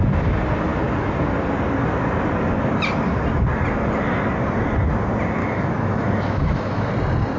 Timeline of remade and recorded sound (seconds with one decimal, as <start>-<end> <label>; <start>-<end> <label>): 0.0-5.4 recorded; 5.4-6.9 remade; 6.9-7.4 recorded